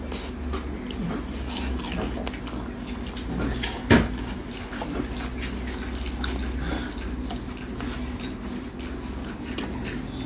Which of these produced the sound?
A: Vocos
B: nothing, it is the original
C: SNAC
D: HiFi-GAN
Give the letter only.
B